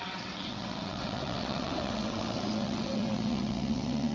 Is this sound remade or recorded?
remade